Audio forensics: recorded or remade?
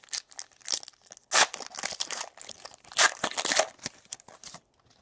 recorded